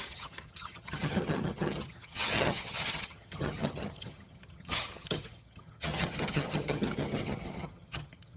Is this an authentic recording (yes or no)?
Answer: no